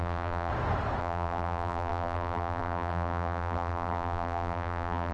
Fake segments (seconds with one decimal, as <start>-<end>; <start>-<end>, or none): 0.0-0.5; 1.0-5.1